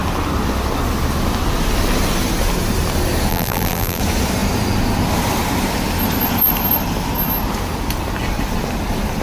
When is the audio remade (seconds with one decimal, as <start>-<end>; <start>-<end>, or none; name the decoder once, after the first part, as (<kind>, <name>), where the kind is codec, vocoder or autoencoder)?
3.3-4.0 (vocoder, BigVGAN v2)